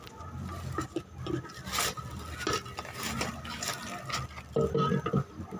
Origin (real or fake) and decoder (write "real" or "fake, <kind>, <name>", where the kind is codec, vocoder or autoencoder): real